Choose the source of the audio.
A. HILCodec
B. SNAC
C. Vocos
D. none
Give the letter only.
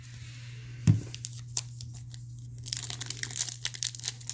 D